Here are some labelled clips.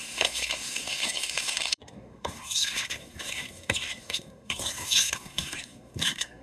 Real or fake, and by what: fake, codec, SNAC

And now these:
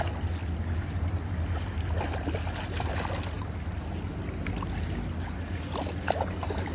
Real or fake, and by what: real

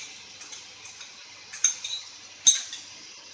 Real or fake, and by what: real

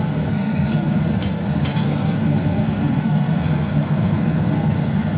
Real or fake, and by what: fake, codec, SNAC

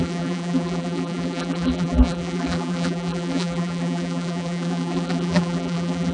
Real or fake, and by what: fake, vocoder, BigVGAN v2